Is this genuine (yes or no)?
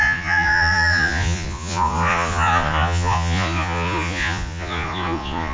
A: no